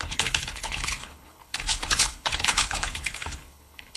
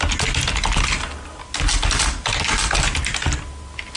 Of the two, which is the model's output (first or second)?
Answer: first